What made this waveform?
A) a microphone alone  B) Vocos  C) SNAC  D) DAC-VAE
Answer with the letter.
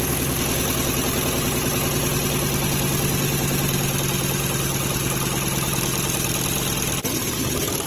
A